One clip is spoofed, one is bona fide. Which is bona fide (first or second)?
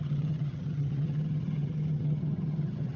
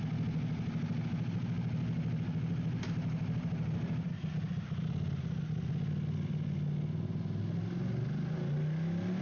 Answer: second